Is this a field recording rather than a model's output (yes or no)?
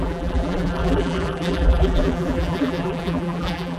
no